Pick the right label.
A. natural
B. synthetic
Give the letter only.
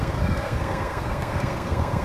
B